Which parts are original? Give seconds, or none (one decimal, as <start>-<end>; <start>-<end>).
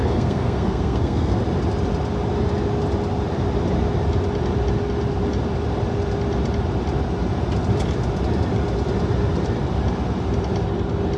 1.4-11.2